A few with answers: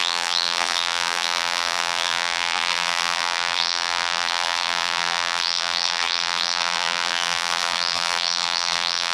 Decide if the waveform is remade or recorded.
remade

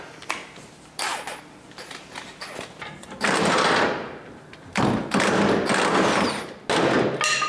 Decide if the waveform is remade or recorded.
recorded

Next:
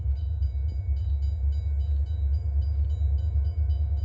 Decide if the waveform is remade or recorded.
recorded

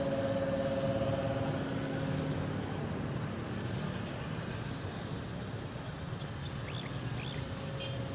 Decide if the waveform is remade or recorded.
recorded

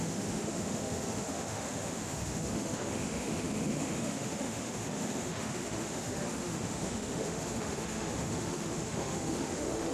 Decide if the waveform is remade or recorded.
remade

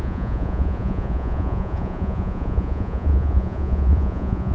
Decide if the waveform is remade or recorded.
remade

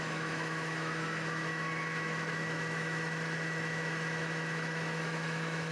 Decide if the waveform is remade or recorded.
remade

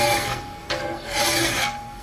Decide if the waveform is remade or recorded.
remade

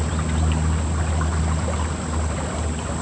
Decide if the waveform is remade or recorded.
recorded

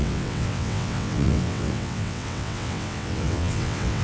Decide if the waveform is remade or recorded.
remade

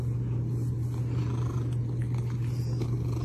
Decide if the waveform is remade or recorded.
recorded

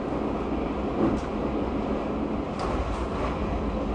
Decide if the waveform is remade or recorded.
recorded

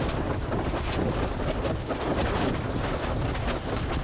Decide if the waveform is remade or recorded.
recorded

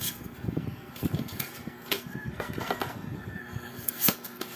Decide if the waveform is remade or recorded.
remade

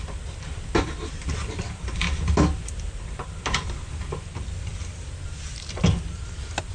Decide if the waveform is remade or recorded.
recorded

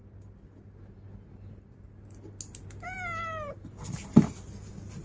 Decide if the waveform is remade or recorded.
recorded